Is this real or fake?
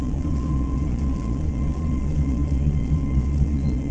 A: fake